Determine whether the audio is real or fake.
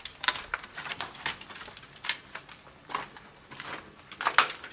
real